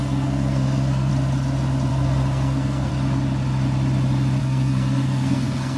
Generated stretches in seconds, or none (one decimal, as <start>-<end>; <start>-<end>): 0.0-1.1; 1.9-2.9; 4.4-5.8